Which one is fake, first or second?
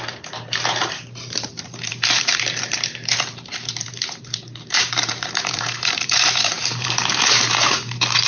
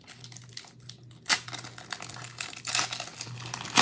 first